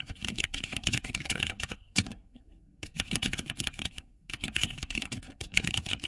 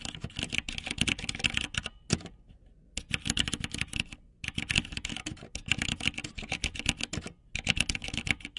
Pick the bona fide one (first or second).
second